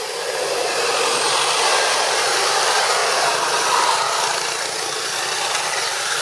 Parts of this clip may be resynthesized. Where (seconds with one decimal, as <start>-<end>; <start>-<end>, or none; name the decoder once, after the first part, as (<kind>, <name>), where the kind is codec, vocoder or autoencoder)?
none